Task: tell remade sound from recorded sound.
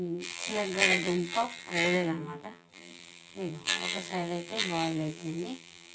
remade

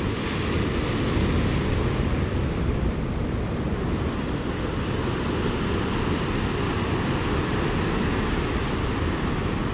recorded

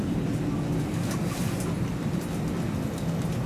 recorded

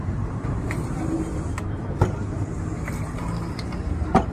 remade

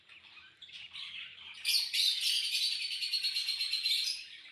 remade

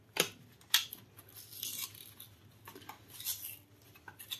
recorded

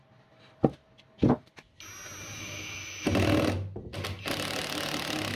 recorded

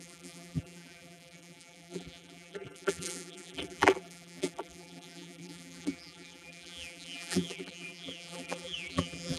remade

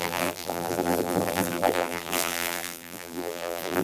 remade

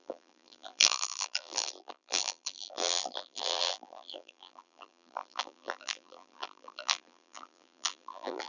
remade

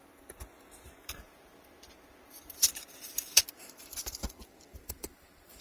remade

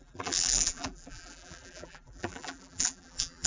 remade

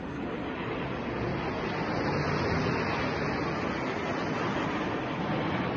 recorded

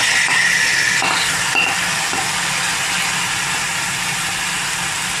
recorded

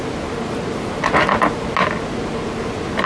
recorded